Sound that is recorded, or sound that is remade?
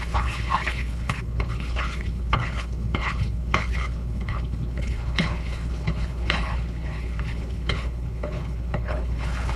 remade